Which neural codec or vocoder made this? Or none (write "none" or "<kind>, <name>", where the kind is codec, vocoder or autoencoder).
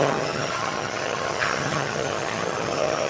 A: vocoder, HiFi-GAN